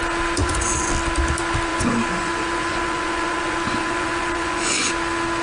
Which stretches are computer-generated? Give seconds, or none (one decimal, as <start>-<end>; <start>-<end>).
0.4-0.9; 1.7-4.9